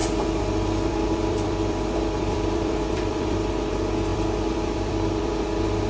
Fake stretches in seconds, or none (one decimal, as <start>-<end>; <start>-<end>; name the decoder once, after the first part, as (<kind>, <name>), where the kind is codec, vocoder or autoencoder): 0.0-3.5 (vocoder, BigVGAN v2); 4.1-5.9